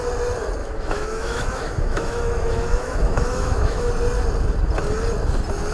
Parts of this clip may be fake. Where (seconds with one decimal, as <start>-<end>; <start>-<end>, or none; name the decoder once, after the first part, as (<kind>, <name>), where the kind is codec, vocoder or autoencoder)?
0.6-3.9 (autoencoder, DAC-VAE)